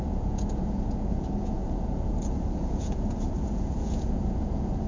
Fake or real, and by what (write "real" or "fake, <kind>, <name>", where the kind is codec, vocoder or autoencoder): fake, vocoder, Vocos